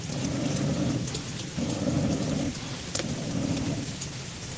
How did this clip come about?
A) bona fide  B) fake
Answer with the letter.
A